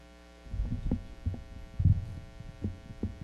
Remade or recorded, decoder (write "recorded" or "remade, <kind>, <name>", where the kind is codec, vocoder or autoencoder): recorded